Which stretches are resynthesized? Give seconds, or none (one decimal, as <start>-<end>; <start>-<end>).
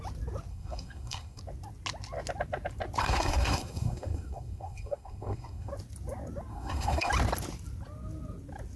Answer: 0.5-1.4; 3.0-5.7; 6.5-7.1